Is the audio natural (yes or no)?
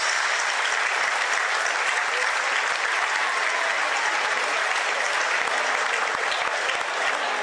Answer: yes